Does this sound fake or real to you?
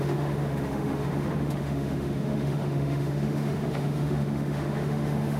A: fake